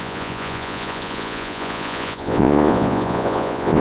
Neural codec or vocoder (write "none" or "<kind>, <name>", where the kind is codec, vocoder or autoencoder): vocoder, Vocos